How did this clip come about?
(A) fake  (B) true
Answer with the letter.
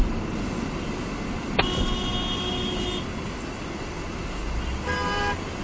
B